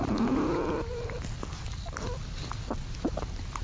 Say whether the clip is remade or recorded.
recorded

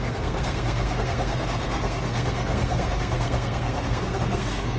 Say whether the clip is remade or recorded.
remade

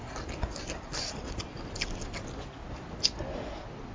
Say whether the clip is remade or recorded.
recorded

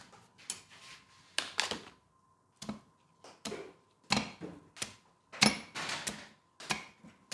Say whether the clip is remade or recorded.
recorded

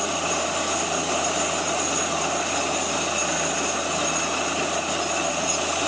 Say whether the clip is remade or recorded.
recorded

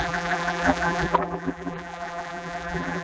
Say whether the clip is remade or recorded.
remade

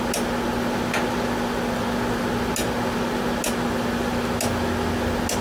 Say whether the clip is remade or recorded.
recorded